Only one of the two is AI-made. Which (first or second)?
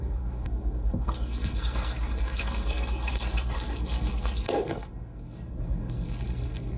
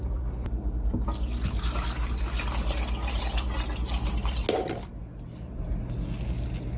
first